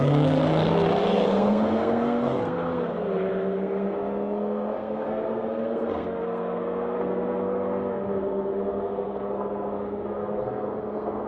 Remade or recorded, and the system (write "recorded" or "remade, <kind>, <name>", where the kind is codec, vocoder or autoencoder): remade, codec, SNAC